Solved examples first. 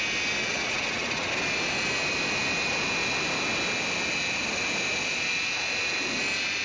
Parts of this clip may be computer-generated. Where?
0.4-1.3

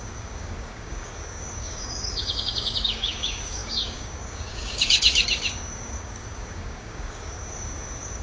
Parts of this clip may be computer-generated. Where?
0.0-8.2

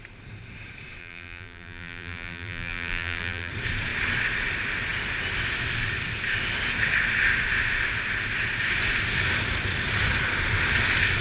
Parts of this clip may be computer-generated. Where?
1.0-3.5

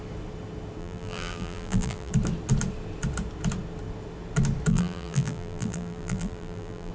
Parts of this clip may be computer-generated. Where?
0.8-2.1; 4.7-6.9